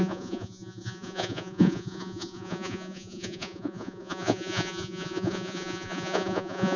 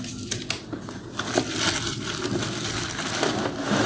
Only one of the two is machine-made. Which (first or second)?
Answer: first